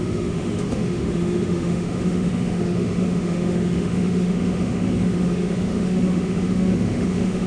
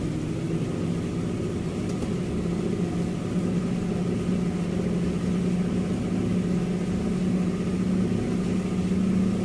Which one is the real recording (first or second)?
second